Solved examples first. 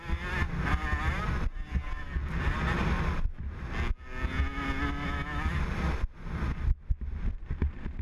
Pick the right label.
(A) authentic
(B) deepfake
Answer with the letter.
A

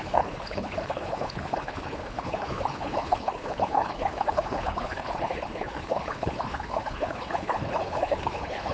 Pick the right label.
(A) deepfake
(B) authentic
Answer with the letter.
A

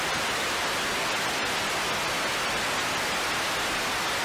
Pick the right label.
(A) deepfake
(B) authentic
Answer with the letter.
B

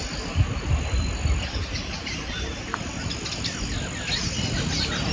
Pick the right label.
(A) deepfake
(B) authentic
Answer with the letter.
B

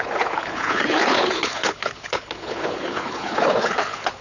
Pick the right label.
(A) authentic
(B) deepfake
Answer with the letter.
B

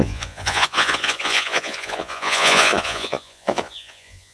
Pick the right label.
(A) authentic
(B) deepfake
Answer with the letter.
B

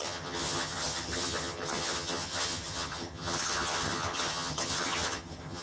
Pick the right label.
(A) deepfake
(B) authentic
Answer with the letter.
A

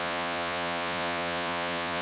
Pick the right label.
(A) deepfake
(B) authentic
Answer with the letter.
A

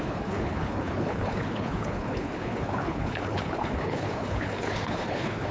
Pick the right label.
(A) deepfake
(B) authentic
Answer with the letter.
A